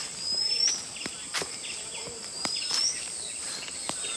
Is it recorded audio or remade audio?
recorded